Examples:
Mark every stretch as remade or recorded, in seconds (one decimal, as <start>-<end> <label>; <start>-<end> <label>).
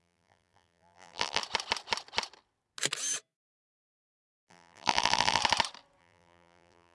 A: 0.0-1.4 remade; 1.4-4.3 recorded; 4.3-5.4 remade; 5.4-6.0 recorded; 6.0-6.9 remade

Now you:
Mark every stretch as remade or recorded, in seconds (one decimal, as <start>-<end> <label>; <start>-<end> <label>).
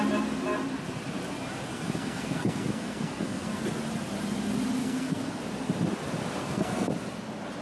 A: 0.0-1.7 recorded; 1.7-3.6 remade; 3.6-4.8 recorded; 4.8-5.4 remade; 5.4-6.4 recorded; 6.4-6.9 remade; 6.9-7.6 recorded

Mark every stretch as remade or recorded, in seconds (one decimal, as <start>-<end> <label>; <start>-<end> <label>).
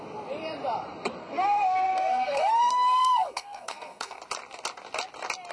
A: 0.0-1.2 recorded; 1.2-4.2 remade; 4.2-5.5 recorded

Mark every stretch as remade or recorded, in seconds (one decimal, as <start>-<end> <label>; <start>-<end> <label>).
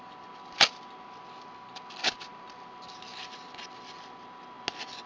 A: 0.0-5.1 recorded